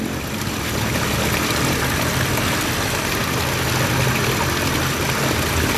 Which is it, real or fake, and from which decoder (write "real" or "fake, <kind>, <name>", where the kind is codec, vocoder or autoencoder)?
real